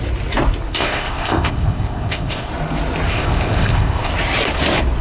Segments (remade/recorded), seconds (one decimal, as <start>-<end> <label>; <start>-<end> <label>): 0.0-0.7 recorded; 0.7-2.5 remade; 2.5-3.1 recorded; 3.1-4.1 remade; 4.1-5.0 recorded